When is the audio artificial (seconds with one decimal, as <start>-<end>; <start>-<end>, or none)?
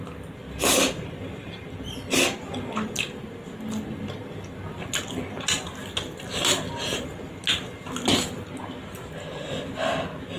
none